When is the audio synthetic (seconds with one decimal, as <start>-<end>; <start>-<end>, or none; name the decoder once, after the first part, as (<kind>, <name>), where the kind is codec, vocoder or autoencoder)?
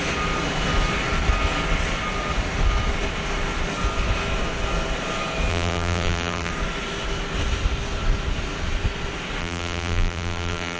5.5-6.5 (vocoder, BigVGAN v2); 9.4-10.8